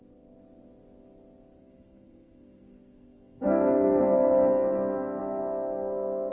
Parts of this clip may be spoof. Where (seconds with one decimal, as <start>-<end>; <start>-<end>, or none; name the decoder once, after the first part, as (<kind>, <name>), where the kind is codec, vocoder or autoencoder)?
1.6-4.0 (codec, SNAC)